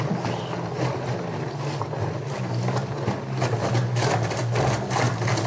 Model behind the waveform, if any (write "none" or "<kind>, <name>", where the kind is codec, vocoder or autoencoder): none